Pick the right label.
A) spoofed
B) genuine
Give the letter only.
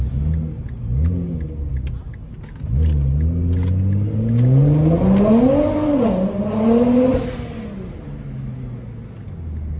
B